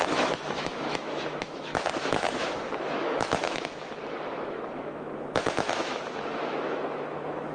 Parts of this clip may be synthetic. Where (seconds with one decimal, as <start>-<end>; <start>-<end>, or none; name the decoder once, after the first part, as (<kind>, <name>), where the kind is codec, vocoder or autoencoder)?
0.0-7.5 (autoencoder, DAC-VAE)